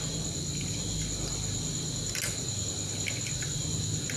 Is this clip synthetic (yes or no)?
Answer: no